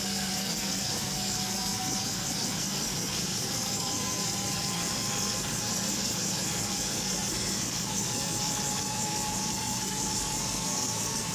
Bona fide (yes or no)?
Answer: no